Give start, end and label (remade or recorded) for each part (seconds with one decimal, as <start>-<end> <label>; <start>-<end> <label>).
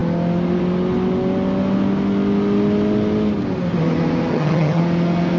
0.0-4.3 recorded; 4.3-4.8 remade; 4.8-5.4 recorded